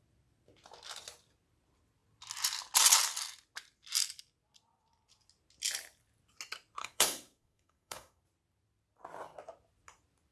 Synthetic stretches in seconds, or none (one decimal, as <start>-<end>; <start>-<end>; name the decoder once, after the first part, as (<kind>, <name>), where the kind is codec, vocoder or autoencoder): 6.8-8.2 (codec, SNAC)